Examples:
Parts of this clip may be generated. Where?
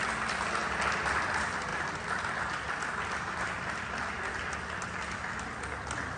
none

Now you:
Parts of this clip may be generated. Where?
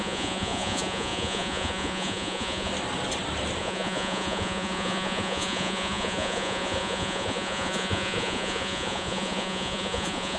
0.0-2.7 (vocoder, Vocos); 3.6-10.4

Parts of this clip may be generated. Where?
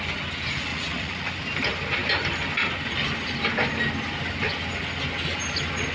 0.7-1.3 (vocoder, Vocos)